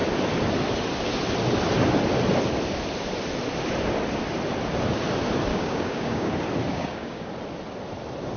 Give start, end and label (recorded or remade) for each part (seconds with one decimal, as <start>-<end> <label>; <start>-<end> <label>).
0.0-5.5 recorded; 5.5-6.3 remade; 6.3-6.7 recorded; 6.7-7.3 remade; 7.3-8.4 recorded